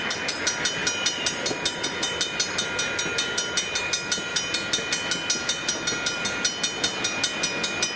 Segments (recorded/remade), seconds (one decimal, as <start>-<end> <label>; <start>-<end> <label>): 0.0-8.0 recorded